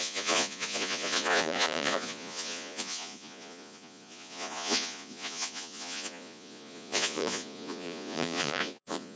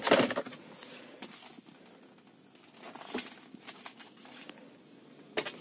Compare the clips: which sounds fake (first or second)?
first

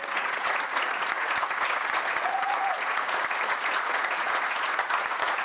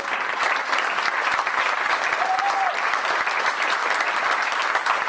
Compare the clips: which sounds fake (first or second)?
first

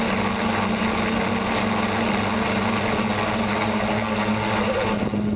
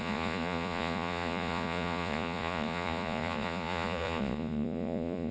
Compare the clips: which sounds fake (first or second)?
second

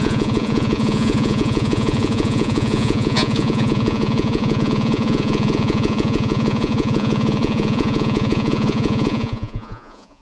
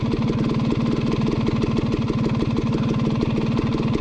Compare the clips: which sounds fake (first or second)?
first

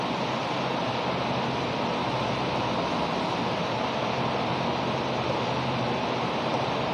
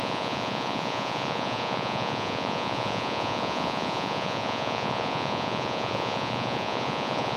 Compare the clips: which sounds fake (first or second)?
second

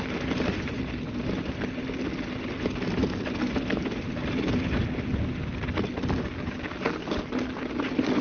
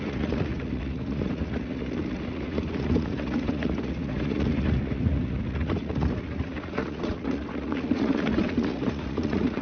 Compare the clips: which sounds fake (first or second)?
second